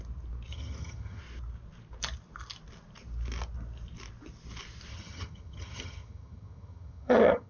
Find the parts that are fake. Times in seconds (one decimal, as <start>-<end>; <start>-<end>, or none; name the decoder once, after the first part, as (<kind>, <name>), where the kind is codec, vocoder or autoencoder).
0.5-1.2 (vocoder, HiFi-GAN); 4.9-7.5